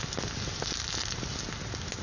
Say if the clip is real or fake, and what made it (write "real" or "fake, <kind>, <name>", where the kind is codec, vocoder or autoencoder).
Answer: real